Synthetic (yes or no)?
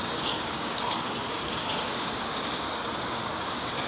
yes